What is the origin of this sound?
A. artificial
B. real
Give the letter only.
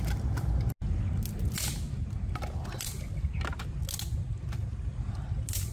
B